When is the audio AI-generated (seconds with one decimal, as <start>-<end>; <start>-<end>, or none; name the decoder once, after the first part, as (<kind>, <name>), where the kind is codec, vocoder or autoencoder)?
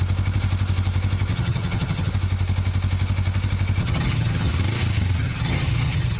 1.3-2.1 (vocoder, HiFi-GAN); 3.8-4.5; 5.2-6.2